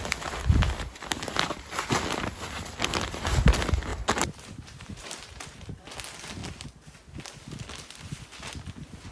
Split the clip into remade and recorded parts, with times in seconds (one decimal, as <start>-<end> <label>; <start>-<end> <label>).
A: 0.0-3.9 recorded; 3.9-5.7 remade; 5.7-9.1 recorded